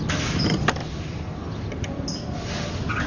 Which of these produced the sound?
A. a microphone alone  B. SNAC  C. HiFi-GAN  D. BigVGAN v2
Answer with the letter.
A